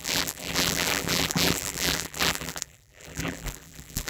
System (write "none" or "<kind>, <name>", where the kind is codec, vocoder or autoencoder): vocoder, BigVGAN v2